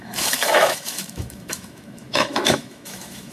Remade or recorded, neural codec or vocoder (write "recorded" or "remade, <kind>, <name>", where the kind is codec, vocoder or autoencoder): remade, autoencoder, DAC-VAE